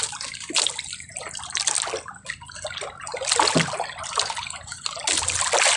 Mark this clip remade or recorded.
recorded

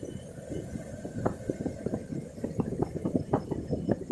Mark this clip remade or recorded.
recorded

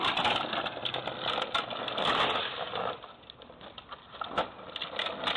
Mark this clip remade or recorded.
recorded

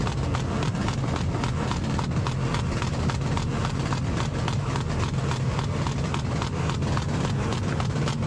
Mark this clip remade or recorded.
recorded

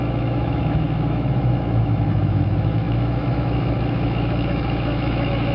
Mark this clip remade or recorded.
remade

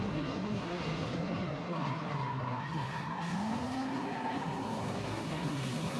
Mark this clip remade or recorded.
remade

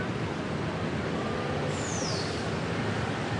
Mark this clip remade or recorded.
recorded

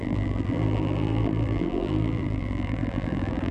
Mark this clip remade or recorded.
remade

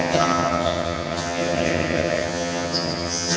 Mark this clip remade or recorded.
remade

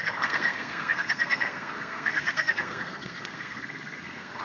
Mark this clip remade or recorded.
remade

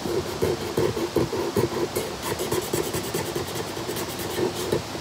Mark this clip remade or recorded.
remade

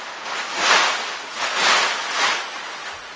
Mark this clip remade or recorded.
remade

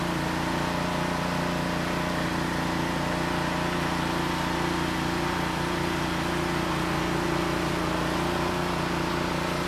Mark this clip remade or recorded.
recorded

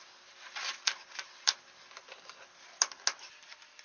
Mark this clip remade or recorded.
recorded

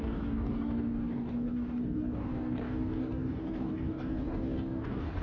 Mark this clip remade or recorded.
remade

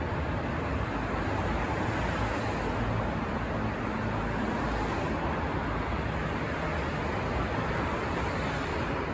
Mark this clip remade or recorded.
recorded